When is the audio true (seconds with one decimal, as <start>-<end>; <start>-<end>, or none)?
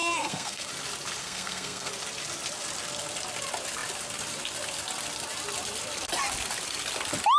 0.7-1.2; 1.9-7.4